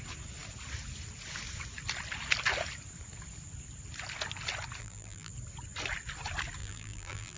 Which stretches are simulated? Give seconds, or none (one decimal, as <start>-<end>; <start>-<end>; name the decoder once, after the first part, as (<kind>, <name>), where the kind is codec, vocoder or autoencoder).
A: 4.8-5.3 (vocoder, BigVGAN v2); 6.6-7.4